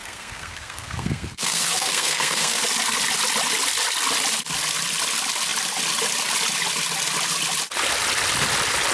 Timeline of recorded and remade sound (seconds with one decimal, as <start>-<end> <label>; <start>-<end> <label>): 0.0-2.6 remade; 2.6-8.9 recorded